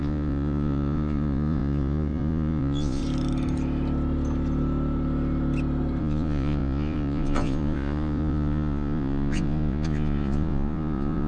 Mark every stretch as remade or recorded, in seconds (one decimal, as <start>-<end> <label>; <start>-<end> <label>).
0.0-3.0 remade; 3.0-6.0 recorded; 6.0-11.3 remade